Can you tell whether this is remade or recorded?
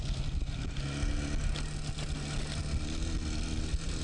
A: recorded